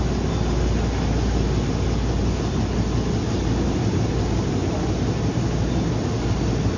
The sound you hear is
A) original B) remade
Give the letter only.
A